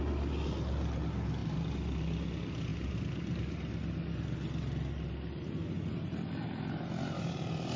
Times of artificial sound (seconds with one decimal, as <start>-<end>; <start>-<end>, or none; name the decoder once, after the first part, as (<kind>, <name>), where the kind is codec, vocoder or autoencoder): none